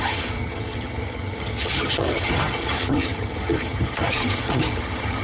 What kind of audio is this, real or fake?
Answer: fake